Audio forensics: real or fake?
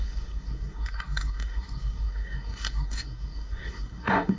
fake